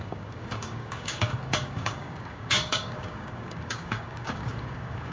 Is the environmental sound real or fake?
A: fake